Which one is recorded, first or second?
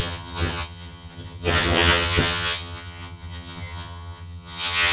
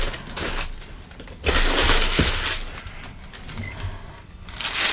second